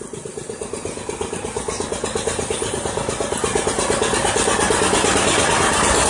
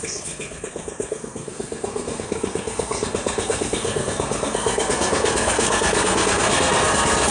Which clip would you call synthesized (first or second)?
second